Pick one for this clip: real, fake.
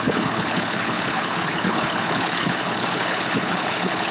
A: fake